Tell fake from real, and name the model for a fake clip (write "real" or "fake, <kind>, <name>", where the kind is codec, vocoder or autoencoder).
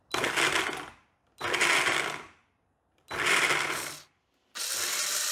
real